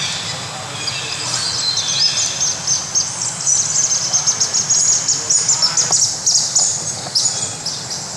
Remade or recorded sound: recorded